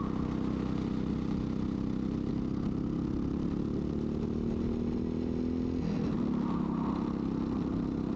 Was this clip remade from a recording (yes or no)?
no